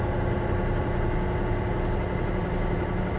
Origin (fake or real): real